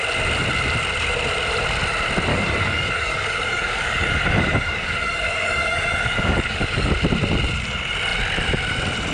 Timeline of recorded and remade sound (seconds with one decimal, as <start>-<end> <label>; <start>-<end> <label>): 0.0-2.3 recorded; 2.3-6.9 remade; 6.9-9.1 recorded